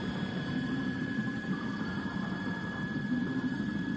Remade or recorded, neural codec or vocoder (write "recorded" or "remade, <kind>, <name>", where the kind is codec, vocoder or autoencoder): remade, vocoder, BigVGAN v2